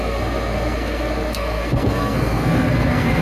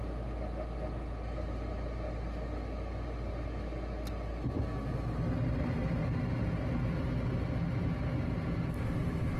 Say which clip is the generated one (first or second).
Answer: first